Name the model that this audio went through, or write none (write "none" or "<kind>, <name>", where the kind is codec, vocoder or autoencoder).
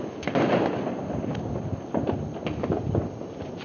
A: none